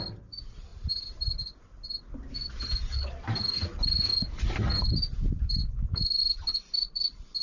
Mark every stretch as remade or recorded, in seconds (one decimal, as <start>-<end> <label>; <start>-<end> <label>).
0.0-0.7 recorded; 0.7-1.4 remade; 1.4-7.4 recorded